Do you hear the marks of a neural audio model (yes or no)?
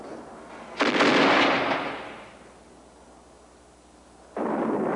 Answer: no